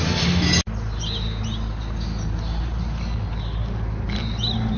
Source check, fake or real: real